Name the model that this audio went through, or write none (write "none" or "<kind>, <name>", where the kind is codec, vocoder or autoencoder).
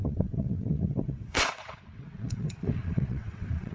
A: vocoder, WaveNeXt